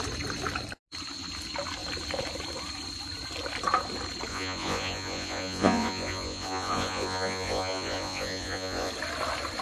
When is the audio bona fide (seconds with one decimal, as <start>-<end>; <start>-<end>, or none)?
0.0-4.3; 8.9-9.6